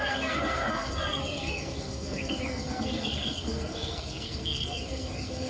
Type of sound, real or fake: fake